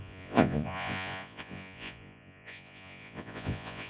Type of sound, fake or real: fake